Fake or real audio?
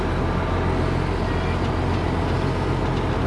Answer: real